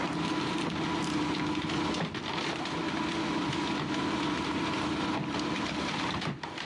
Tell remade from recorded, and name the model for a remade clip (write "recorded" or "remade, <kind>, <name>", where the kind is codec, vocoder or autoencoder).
remade, vocoder, BigVGAN v2